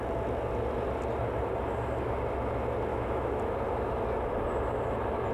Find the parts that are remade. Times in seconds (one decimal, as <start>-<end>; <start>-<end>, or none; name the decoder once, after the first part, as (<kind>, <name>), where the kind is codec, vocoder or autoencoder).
2.9-3.4 (autoencoder, DAC-VAE)